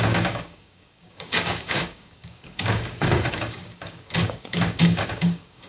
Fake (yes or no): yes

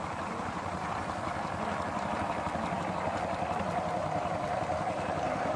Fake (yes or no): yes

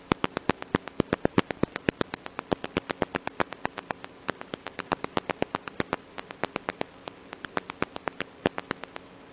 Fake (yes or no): no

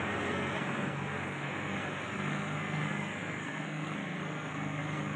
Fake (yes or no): yes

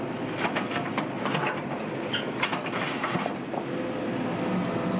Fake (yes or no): no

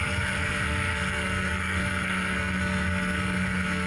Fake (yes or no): yes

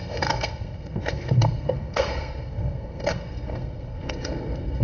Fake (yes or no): yes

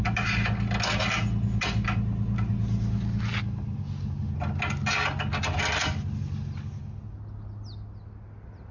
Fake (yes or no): no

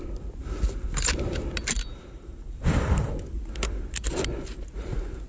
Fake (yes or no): no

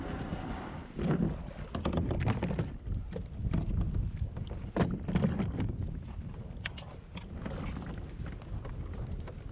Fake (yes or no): no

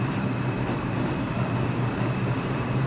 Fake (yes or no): yes